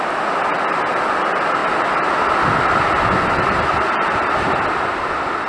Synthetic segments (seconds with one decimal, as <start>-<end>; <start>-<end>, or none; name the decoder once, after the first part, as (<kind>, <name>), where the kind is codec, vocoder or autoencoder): none